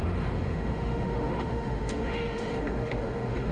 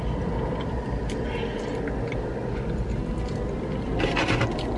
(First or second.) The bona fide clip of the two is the second